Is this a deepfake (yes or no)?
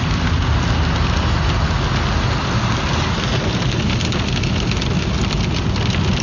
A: no